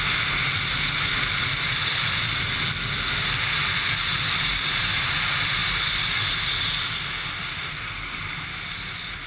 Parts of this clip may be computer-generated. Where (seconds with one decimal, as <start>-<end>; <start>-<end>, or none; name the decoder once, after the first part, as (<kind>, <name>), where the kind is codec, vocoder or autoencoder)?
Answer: none